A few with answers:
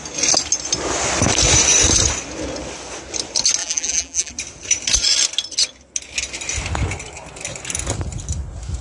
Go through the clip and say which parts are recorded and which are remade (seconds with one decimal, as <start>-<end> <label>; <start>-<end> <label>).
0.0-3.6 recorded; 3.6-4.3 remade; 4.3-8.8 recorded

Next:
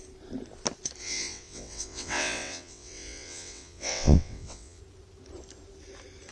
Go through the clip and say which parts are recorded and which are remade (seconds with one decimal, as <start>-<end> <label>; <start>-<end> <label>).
0.0-1.0 recorded; 1.0-4.8 remade; 4.8-6.3 recorded

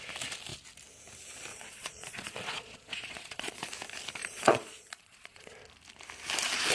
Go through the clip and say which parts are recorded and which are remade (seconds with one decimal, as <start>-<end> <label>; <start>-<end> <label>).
0.0-1.5 recorded; 1.5-3.7 remade; 3.7-4.2 recorded; 4.2-5.6 remade; 5.6-6.7 recorded

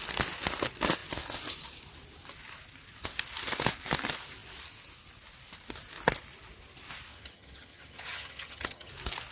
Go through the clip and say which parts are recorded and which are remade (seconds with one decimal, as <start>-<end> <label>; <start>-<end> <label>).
0.0-7.1 recorded; 7.1-8.9 remade; 8.9-9.3 recorded

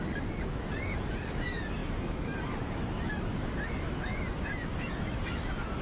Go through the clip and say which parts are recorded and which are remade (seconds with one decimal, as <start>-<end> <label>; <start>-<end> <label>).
0.0-5.8 remade

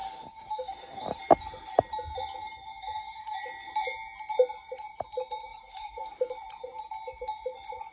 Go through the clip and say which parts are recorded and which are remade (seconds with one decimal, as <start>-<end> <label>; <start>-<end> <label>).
0.0-1.2 remade; 1.2-2.7 recorded; 2.7-3.4 remade; 3.4-5.5 recorded; 5.5-6.1 remade; 6.1-7.9 recorded